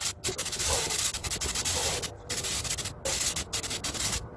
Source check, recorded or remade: recorded